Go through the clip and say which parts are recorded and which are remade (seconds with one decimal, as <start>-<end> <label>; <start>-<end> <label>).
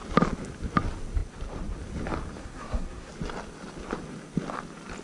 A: 0.0-2.4 recorded; 2.4-3.1 remade; 3.1-5.0 recorded